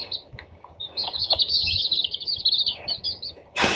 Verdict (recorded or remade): remade